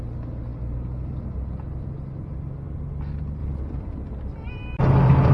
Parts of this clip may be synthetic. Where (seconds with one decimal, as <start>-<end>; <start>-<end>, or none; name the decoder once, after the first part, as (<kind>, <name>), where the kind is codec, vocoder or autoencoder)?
none